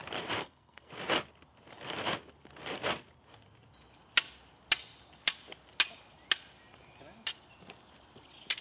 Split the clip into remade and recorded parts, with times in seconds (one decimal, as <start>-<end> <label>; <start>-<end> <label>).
0.0-0.4 recorded; 0.4-0.9 remade; 0.9-8.6 recorded